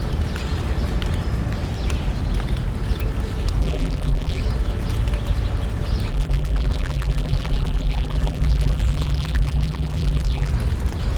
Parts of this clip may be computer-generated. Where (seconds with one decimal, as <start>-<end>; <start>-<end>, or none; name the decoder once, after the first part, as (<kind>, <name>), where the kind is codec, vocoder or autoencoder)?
3.6-4.4 (vocoder, BigVGAN v2); 6.1-10.5